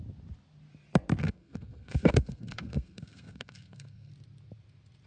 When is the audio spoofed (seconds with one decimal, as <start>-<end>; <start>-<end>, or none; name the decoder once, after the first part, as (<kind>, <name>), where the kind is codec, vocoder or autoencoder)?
1.2-4.1 (codec, SNAC)